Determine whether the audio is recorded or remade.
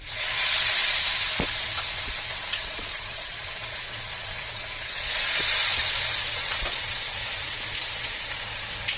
remade